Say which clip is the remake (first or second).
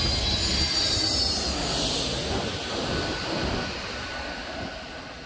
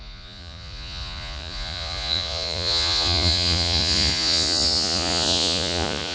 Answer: second